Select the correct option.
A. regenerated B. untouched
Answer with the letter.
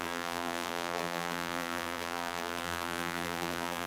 A